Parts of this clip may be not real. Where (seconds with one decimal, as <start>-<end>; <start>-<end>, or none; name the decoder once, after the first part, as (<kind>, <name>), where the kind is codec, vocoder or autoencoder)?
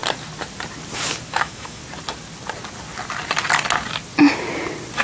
1.3-1.8 (autoencoder, DAC-VAE)